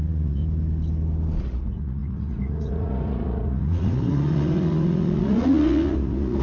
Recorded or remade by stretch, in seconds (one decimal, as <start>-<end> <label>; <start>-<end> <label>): 0.0-0.4 remade; 0.4-1.4 recorded; 1.4-6.4 remade